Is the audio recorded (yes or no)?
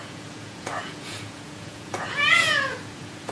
no